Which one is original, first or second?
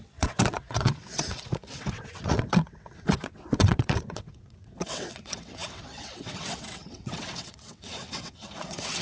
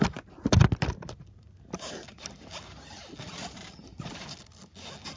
second